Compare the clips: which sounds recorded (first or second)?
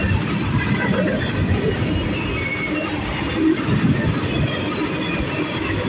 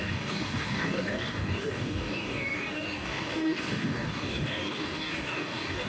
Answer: first